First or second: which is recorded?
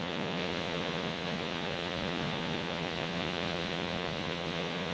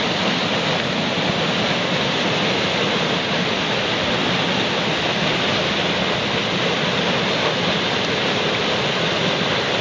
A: second